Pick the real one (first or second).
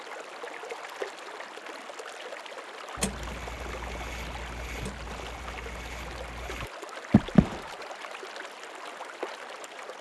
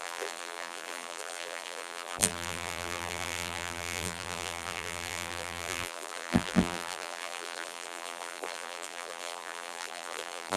first